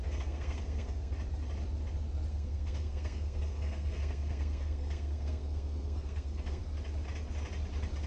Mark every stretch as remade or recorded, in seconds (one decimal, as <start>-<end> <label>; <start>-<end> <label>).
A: 0.0-1.1 remade; 1.1-2.3 recorded; 2.3-6.6 remade; 6.6-8.1 recorded